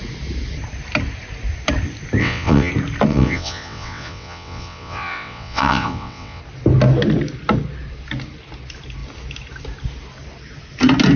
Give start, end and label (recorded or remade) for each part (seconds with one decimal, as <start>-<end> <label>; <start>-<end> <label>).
0.0-2.2 recorded; 2.2-2.7 remade; 2.7-3.1 recorded; 3.1-6.4 remade; 6.4-11.2 recorded